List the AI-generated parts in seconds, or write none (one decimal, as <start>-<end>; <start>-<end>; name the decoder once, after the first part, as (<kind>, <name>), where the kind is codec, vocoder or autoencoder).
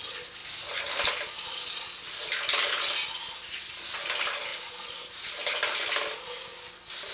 none